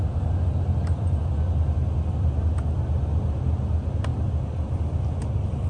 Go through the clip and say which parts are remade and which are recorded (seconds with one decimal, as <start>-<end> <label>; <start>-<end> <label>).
0.0-5.7 recorded